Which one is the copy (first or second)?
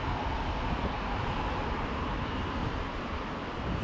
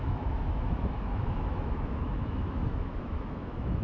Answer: second